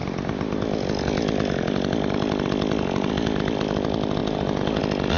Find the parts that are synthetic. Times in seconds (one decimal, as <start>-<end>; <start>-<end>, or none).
none